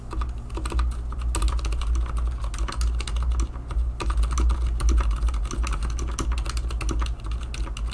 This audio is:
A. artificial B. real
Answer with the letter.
B